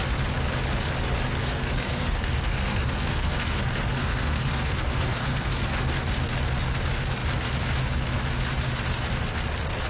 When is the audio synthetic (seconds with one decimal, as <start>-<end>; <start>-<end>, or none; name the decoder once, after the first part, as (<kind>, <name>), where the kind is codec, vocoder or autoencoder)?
1.4-5.6 (codec, SNAC)